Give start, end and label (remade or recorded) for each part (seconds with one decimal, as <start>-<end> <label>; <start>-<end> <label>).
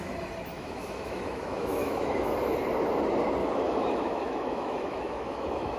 0.0-0.5 recorded; 0.5-2.3 remade; 2.3-3.4 recorded; 3.4-5.8 remade